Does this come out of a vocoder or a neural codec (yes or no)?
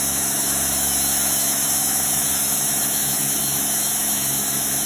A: yes